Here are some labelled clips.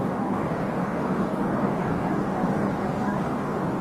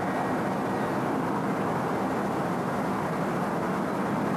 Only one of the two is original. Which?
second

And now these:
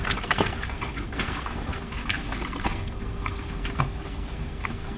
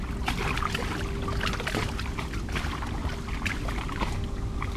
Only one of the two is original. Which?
second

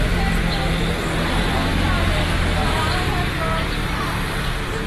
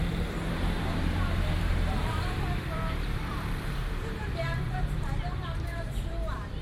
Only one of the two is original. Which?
first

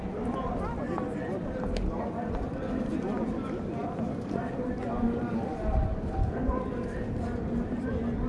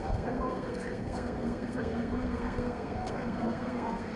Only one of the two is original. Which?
first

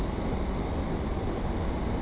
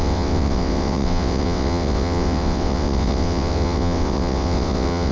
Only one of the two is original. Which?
first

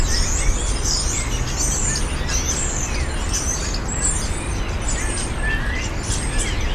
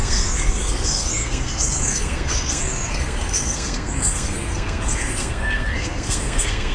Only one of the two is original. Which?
first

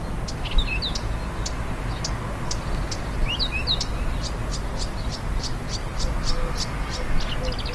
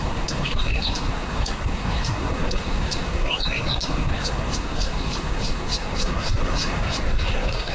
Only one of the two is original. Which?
first